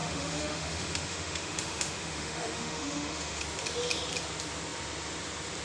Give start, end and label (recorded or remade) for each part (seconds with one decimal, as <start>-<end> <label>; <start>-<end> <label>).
0.0-3.4 remade; 3.4-5.6 recorded